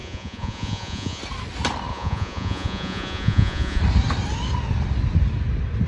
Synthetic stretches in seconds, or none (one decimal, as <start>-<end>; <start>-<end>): 0.0-1.2; 1.9-3.8